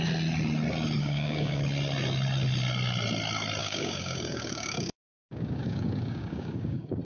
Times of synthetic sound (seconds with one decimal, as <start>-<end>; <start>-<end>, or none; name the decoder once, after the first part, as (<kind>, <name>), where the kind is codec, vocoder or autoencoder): 1.0-1.6 (codec, DAC); 3.6-7.0